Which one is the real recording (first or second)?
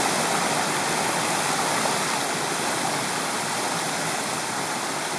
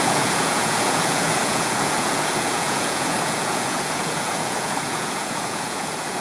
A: first